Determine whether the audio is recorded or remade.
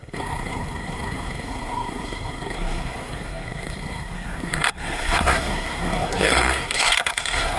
remade